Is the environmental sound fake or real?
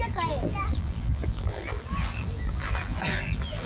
fake